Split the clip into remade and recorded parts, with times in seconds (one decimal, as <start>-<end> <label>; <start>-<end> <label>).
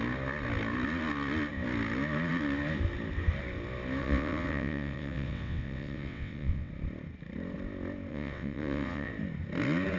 0.0-4.0 recorded; 4.0-6.7 remade; 6.7-8.1 recorded; 8.1-9.1 remade; 9.1-10.0 recorded